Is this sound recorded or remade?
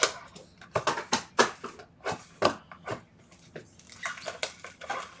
recorded